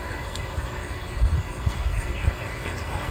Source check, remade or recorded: remade